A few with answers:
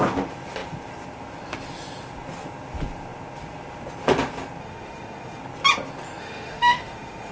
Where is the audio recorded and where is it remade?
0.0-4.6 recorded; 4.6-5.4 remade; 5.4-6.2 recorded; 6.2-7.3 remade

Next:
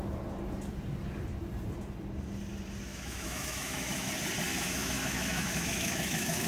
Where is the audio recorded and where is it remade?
0.0-2.9 recorded; 2.9-4.1 remade; 4.1-4.5 recorded; 4.5-6.5 remade

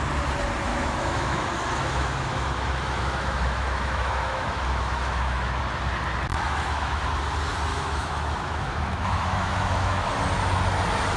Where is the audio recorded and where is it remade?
0.0-0.7 recorded; 0.7-5.6 remade; 5.6-6.3 recorded; 6.3-7.0 remade; 7.0-7.7 recorded; 7.7-10.1 remade; 10.1-11.2 recorded

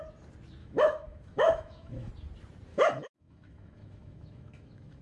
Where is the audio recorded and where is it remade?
0.0-0.6 recorded; 0.6-2.1 remade; 2.1-2.7 recorded; 2.7-5.0 remade

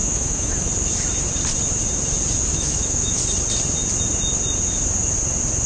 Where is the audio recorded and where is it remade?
0.0-0.7 remade; 0.7-2.5 recorded; 2.5-3.2 remade; 3.2-5.7 recorded

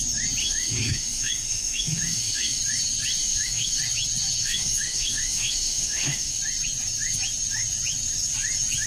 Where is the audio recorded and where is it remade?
0.0-0.4 recorded; 0.4-2.6 remade; 2.6-3.2 recorded; 3.2-3.8 remade; 3.8-4.4 recorded; 4.4-6.4 remade; 6.4-8.9 recorded

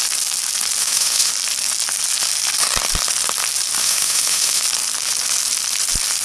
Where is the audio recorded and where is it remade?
0.0-0.8 recorded; 0.8-1.3 remade; 1.3-3.8 recorded; 3.8-4.6 remade; 4.6-6.2 recorded